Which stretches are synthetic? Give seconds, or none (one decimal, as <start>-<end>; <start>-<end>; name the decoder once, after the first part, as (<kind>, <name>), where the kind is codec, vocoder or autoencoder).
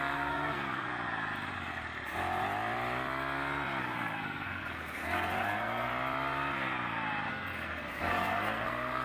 0.0-0.9 (codec, SNAC); 3.8-5.9; 7.3-9.0